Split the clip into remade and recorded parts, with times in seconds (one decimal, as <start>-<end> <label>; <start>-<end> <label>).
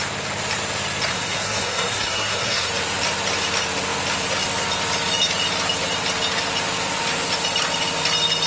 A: 0.0-1.1 recorded; 1.1-2.7 remade; 2.7-8.5 recorded